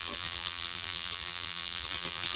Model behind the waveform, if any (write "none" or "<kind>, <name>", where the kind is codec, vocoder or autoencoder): vocoder, BigVGAN v2